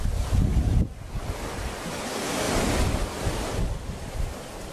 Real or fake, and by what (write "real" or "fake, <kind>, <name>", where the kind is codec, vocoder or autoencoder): real